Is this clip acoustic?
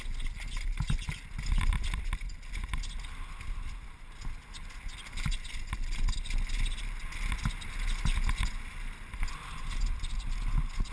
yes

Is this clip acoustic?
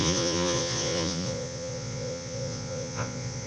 no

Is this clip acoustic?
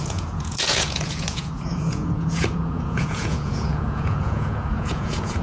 no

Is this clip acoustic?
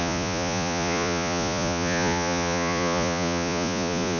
no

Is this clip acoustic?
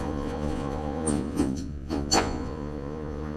no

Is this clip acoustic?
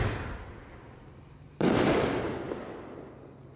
yes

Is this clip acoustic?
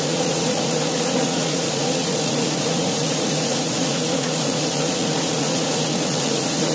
no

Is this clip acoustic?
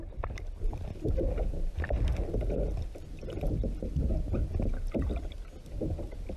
yes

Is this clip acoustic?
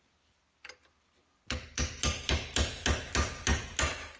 yes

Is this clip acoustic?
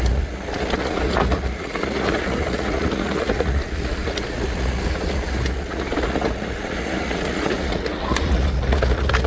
no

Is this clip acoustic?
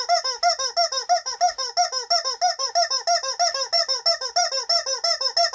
yes